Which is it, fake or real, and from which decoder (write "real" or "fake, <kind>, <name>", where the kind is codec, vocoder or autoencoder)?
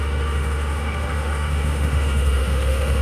fake, autoencoder, DAC-VAE